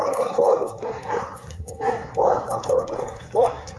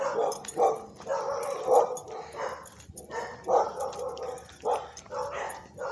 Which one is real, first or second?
second